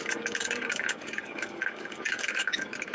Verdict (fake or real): fake